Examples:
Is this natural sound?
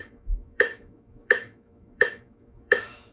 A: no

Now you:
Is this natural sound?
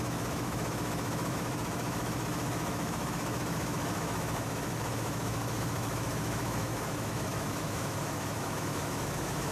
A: no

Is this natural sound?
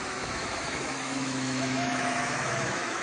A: no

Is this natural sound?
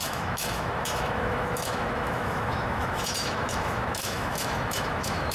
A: no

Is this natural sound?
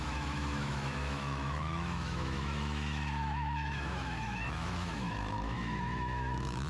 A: no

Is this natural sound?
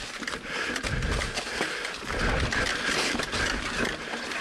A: yes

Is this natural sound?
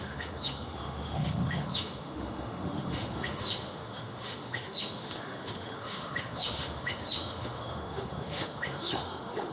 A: no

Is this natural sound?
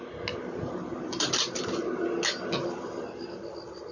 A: yes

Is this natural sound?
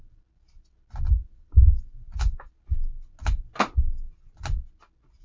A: yes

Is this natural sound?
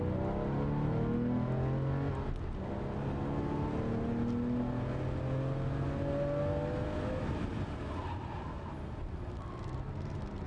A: yes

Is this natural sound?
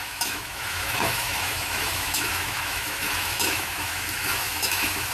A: no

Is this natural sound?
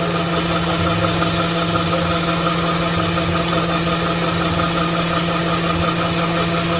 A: yes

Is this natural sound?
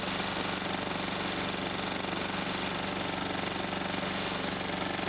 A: yes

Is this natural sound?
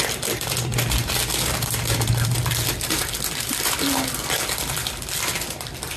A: yes